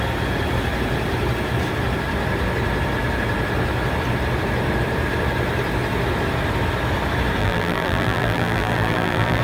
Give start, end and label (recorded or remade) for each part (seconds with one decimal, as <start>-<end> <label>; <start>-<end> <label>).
0.0-7.4 recorded; 7.4-9.4 remade